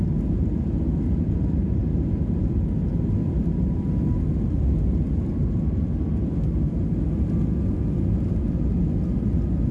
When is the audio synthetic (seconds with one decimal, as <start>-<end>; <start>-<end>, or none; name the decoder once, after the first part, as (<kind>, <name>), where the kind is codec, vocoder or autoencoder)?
none